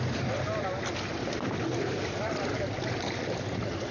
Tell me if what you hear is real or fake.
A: real